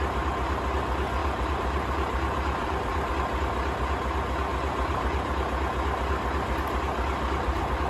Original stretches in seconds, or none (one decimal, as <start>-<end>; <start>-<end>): 0.0-1.2; 3.1-4.5; 5.3-7.9